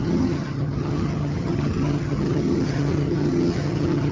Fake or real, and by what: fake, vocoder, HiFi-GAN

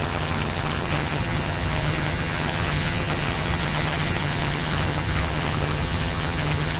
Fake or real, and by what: fake, vocoder, HiFi-GAN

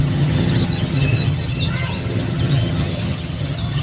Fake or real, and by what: fake, vocoder, HiFi-GAN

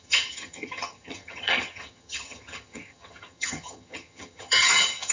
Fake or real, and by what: fake, vocoder, HiFi-GAN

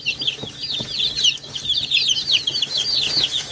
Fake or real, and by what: real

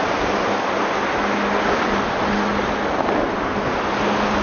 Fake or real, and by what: real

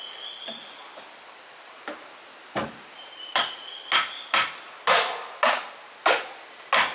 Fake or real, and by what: real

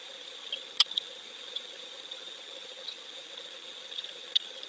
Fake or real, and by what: fake, vocoder, HiFi-GAN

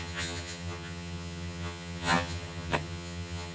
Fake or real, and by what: fake, vocoder, HiFi-GAN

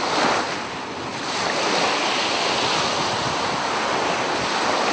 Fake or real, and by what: real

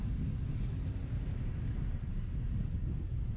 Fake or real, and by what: real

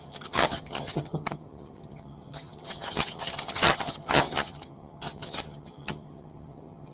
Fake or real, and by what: fake, vocoder, HiFi-GAN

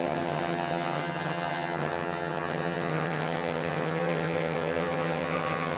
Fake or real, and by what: fake, vocoder, HiFi-GAN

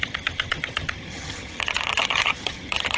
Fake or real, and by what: fake, vocoder, HiFi-GAN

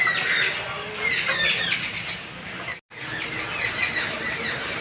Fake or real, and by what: real